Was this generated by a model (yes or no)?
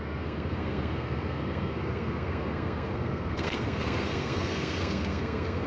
yes